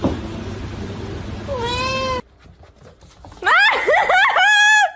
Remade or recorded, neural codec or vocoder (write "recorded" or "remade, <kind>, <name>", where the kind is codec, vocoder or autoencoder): recorded